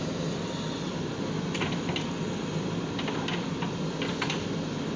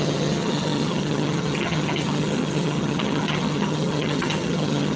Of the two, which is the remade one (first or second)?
second